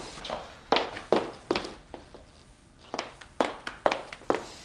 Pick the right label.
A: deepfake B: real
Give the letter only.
B